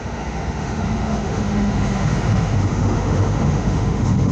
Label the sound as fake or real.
fake